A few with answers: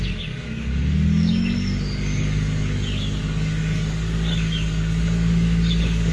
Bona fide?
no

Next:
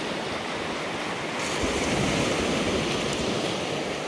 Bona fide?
yes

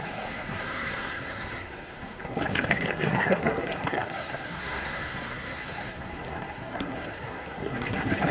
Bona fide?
no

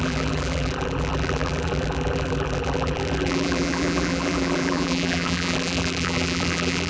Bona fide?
no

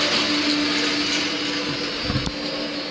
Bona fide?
yes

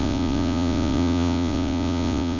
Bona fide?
no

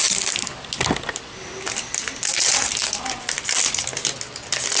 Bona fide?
yes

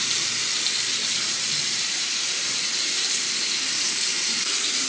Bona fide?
no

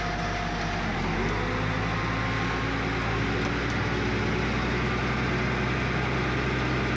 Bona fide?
yes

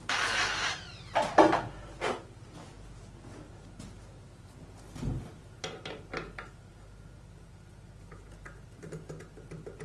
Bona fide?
yes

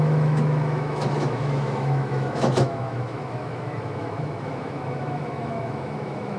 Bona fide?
no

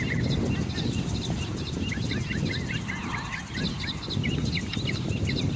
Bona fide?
yes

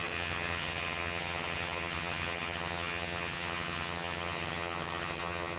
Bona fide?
no